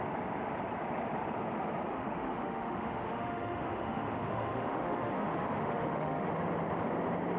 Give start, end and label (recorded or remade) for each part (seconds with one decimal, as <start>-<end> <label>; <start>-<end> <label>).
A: 0.0-1.9 recorded; 1.9-6.3 remade; 6.3-7.4 recorded